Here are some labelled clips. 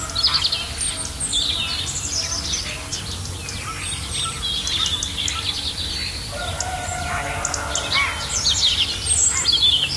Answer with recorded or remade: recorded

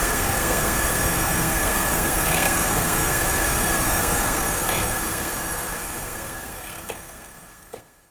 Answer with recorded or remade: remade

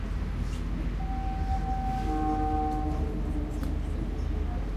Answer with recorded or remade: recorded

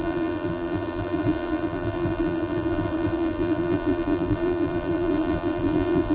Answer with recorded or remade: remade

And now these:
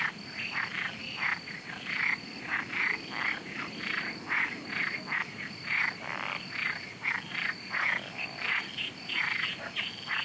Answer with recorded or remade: recorded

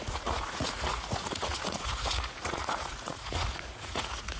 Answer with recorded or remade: remade